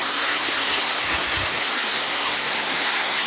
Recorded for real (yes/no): no